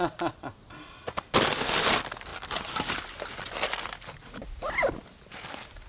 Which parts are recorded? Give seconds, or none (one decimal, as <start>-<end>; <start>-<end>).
0.0-5.9